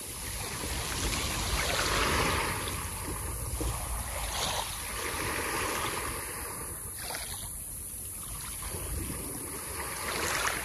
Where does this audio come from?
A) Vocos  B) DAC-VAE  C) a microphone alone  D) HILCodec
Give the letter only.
C